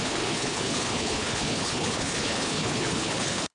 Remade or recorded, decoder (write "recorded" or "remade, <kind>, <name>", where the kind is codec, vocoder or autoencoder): remade, codec, HILCodec